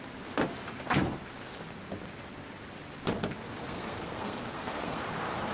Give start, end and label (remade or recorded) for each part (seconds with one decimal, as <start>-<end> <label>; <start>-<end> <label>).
0.0-3.6 recorded; 3.6-5.0 remade; 5.0-5.5 recorded